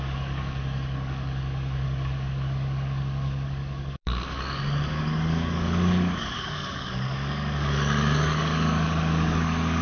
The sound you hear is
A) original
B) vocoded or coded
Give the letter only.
B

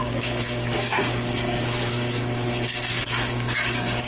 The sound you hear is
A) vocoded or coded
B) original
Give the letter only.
A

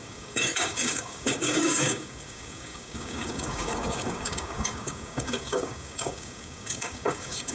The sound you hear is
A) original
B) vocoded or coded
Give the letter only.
B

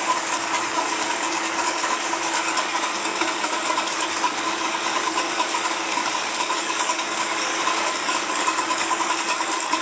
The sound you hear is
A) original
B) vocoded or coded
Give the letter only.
B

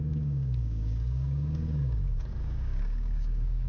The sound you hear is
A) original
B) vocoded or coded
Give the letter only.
B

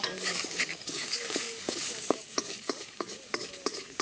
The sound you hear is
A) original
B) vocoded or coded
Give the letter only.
B